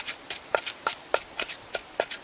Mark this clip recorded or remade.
recorded